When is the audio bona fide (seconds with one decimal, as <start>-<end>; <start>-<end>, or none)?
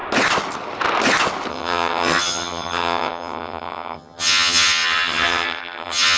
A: 0.0-1.5